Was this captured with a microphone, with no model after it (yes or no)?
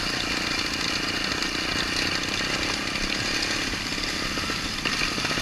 yes